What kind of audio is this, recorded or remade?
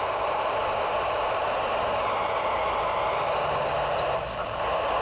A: recorded